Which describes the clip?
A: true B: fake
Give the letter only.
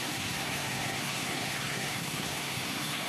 B